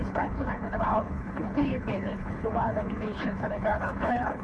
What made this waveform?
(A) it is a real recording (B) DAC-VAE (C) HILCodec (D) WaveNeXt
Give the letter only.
C